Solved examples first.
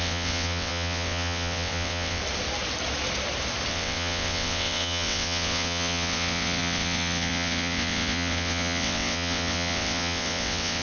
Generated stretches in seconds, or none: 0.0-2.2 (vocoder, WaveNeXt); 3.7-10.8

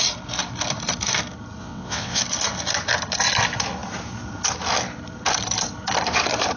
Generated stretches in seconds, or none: 1.6-2.2 (vocoder, WaveNeXt)

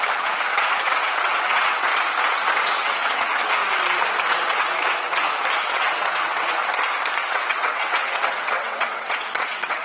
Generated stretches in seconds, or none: 0.0-1.9 (vocoder, WaveNeXt); 2.6-3.6; 4.3-5.1; 5.6-6.6; 7.2-9.8

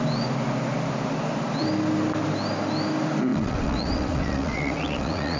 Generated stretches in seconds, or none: 3.3-5.4 (vocoder, WaveNeXt)